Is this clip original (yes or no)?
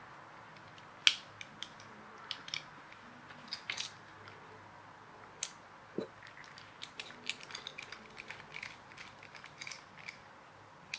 yes